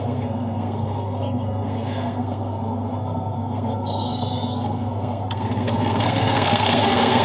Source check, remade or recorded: remade